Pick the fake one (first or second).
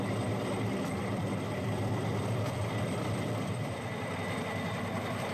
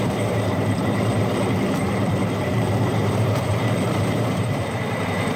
second